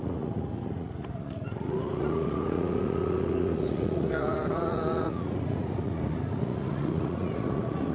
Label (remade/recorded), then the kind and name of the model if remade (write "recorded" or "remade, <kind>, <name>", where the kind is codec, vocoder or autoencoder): remade, vocoder, Vocos